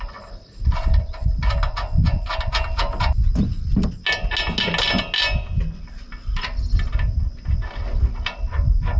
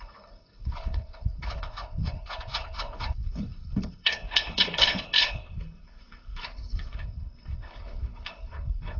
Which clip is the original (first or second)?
first